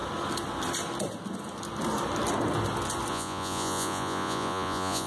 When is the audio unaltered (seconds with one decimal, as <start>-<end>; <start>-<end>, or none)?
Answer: 0.0-3.1